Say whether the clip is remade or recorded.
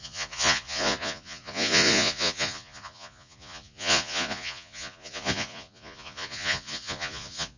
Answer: remade